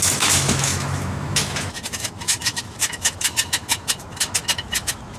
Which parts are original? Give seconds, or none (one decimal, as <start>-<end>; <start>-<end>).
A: none